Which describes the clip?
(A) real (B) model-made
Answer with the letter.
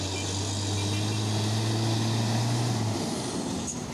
A